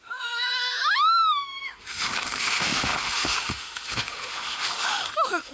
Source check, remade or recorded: remade